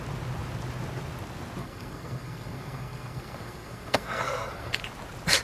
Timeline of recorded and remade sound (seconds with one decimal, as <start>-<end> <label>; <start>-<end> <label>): 0.0-1.6 recorded; 1.6-4.8 remade; 4.8-5.4 recorded